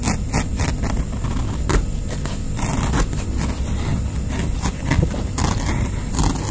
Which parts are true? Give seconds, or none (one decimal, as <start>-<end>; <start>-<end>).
0.0-6.5